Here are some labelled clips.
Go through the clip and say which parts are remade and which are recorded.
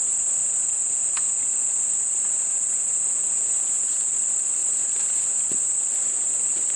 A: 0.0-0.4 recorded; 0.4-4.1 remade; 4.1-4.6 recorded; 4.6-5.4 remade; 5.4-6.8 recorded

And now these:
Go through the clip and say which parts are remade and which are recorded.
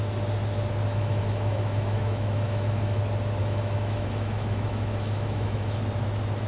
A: 0.0-0.9 recorded; 0.9-3.0 remade; 3.0-3.4 recorded; 3.4-5.8 remade; 5.8-6.5 recorded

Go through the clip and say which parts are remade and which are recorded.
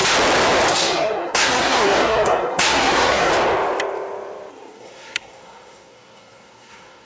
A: 0.0-0.7 recorded; 0.7-3.3 remade; 3.3-4.5 recorded; 4.5-7.1 remade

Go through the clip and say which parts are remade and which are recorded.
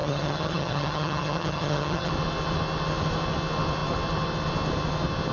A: 0.0-2.1 remade; 2.1-5.3 recorded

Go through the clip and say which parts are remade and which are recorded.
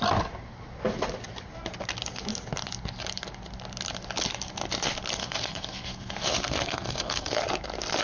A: 0.0-5.2 recorded; 5.2-7.4 remade; 7.4-8.0 recorded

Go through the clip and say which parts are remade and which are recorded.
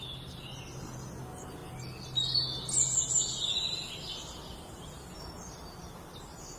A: 0.0-6.6 recorded